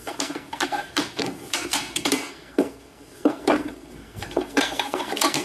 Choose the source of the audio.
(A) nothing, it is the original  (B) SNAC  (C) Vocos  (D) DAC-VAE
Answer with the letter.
B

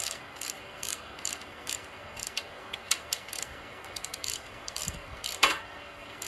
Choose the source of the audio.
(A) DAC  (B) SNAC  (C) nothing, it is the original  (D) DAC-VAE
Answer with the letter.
B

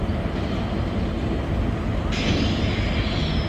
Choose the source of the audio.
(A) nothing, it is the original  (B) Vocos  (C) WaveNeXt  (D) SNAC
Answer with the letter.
A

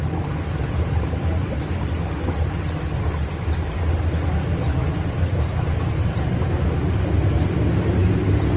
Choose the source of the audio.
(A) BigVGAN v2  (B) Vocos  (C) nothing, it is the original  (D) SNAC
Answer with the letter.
C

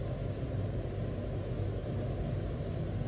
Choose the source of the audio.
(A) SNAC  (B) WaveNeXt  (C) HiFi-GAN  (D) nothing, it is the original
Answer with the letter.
D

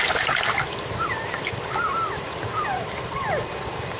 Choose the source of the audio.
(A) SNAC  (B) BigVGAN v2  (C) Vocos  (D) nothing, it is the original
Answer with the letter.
D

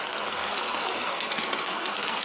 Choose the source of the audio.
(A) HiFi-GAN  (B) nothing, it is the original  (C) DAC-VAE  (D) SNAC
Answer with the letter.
D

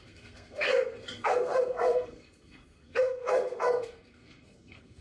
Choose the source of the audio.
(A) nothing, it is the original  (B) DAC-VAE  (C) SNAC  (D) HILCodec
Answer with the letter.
C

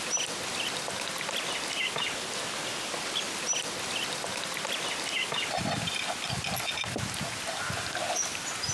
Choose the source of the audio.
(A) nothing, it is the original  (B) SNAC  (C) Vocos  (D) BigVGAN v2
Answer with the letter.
A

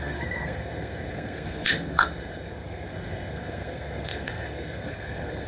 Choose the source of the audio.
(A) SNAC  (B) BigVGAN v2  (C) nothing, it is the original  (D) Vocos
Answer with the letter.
A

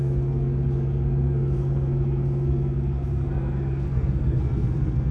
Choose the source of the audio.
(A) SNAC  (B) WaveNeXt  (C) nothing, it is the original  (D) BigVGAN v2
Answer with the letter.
A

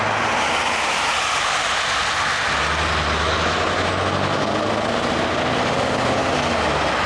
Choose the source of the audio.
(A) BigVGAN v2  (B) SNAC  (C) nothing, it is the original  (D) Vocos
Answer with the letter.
C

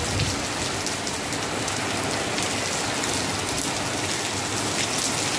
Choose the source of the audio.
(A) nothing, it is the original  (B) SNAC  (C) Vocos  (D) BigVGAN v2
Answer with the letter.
A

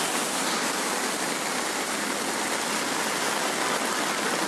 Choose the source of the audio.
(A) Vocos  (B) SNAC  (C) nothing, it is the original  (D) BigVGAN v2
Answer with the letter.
C